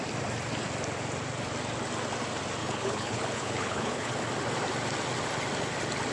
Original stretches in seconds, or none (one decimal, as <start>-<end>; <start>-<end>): 0.0-2.6; 4.1-6.1